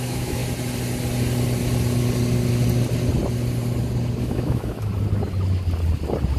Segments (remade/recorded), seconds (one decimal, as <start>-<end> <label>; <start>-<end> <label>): 0.0-0.4 remade; 0.4-4.2 recorded; 4.2-4.9 remade; 4.9-6.4 recorded